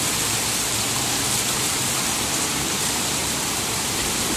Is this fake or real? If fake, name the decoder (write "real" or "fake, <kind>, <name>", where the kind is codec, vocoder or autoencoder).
fake, vocoder, BigVGAN v2